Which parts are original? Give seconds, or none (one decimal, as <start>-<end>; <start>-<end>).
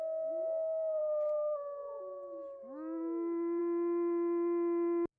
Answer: 0.0-5.2